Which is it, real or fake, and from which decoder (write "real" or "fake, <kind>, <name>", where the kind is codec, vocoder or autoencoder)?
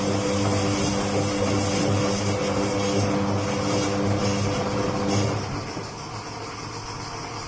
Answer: real